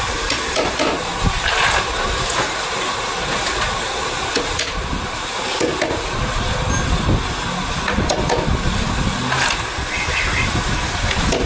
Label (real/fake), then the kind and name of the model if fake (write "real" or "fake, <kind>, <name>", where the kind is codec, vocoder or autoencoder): real